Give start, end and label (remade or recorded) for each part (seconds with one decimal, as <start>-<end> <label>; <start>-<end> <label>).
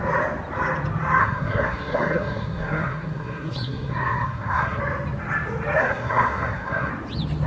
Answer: 0.0-1.2 recorded; 1.2-4.8 remade; 4.8-5.8 recorded; 5.8-6.9 remade; 6.9-7.5 recorded